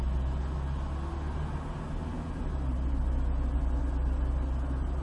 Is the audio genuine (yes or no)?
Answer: yes